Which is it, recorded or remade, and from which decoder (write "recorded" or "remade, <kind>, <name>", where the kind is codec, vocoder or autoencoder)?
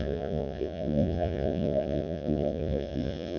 remade, vocoder, Vocos